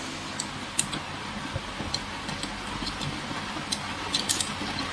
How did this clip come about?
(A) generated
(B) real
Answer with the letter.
B